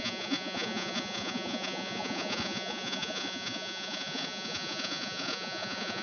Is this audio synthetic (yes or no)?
yes